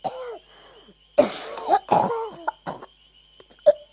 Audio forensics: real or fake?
real